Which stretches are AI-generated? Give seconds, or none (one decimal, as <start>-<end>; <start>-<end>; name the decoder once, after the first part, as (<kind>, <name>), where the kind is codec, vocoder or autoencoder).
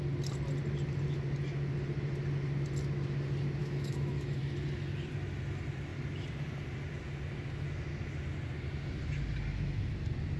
3.6-4.4 (autoencoder, DAC-VAE)